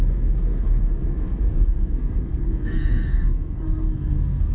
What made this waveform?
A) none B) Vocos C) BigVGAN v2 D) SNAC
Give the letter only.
D